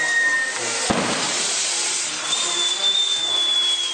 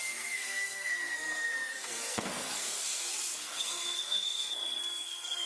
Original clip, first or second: first